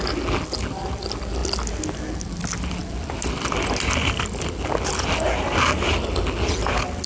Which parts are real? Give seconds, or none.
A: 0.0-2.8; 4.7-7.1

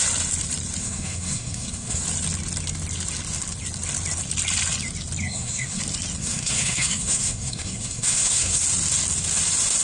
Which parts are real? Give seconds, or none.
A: 0.0-0.8; 2.0-5.2; 5.8-6.2; 8.6-9.8

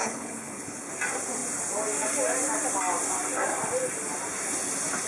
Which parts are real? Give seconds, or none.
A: 0.9-5.1

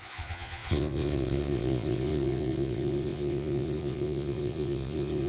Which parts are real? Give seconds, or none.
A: none

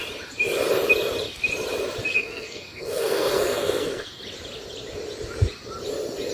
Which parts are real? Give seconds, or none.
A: 0.0-2.1; 4.2-6.3

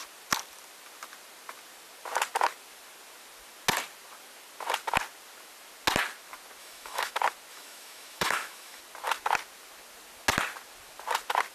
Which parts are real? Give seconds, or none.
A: 0.0-6.6; 7.1-7.5; 8.8-11.5

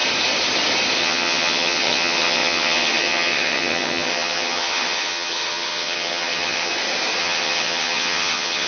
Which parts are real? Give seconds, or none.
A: 0.0-1.0; 6.7-7.2